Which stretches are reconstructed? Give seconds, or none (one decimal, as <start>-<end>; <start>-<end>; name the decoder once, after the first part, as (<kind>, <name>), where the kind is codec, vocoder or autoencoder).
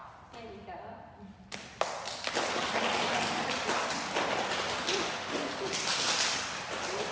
none